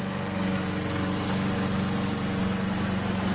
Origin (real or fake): real